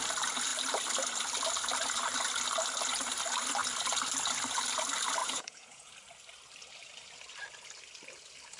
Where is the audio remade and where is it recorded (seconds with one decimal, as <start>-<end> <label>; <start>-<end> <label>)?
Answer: 0.0-5.2 recorded; 5.2-5.9 remade; 5.9-8.6 recorded